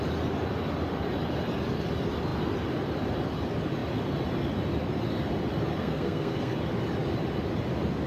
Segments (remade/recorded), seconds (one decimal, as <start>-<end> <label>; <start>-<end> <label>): 0.0-5.8 recorded; 5.8-6.5 remade; 6.5-8.1 recorded

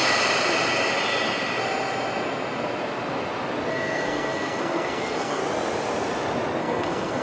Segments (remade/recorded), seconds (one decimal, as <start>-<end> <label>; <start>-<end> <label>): 0.0-3.7 recorded; 3.7-5.4 remade; 5.4-6.6 recorded; 6.6-7.2 remade

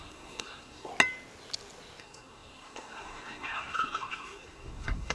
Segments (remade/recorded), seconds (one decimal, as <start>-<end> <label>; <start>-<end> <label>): 0.0-0.9 remade; 0.9-2.0 recorded; 2.0-5.1 remade

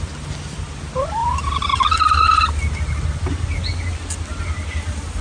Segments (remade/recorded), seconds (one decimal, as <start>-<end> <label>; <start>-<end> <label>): 0.0-5.2 recorded

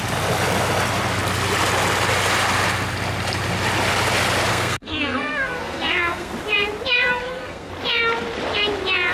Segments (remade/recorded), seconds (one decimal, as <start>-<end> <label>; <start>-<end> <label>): 0.0-4.5 recorded; 4.5-6.3 remade; 6.3-7.2 recorded; 7.2-7.7 remade; 7.7-9.1 recorded

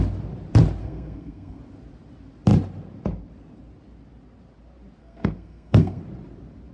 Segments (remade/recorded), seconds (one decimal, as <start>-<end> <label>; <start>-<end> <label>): 0.0-0.8 recorded; 0.8-1.6 remade; 1.6-5.0 recorded; 5.0-6.0 remade; 6.0-6.7 recorded